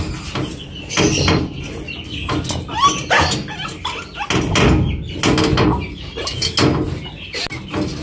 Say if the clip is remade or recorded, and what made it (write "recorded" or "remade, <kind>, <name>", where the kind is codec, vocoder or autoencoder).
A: recorded